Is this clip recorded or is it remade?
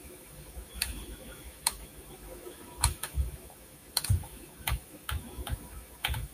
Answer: remade